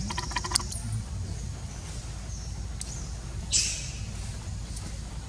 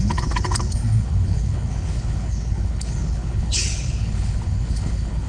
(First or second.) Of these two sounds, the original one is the first